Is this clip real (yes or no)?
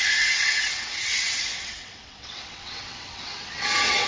no